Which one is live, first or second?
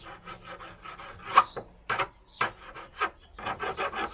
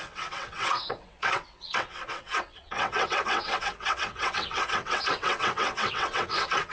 first